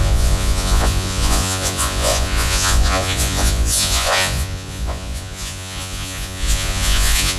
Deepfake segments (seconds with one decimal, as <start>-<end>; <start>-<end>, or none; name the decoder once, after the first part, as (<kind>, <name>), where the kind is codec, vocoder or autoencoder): 0.0-7.4 (vocoder, Vocos)